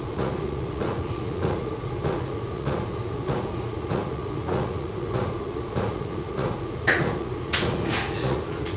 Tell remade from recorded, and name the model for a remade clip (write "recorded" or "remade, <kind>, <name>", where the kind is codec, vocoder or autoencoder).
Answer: remade, vocoder, Vocos